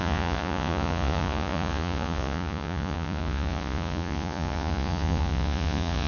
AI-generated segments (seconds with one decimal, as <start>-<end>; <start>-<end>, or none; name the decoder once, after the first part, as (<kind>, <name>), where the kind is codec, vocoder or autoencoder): 0.0-6.1 (vocoder, Vocos)